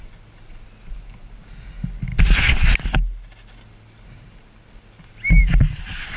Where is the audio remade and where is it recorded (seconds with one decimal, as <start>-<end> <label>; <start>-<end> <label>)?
0.0-6.2 recorded